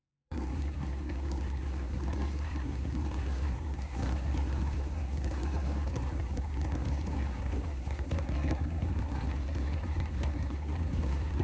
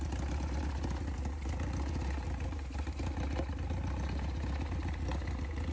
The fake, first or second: first